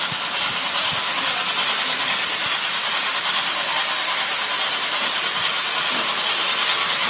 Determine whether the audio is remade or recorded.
remade